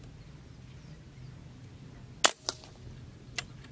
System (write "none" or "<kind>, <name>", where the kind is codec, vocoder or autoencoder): none